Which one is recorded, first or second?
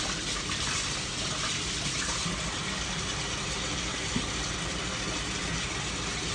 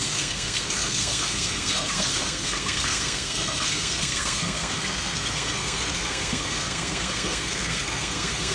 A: first